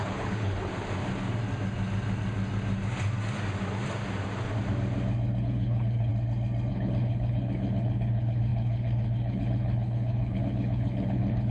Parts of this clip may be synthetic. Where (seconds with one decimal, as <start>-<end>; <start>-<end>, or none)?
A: 0.0-0.7; 5.4-6.1; 6.7-11.5